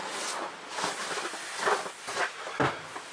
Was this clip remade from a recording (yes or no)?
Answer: no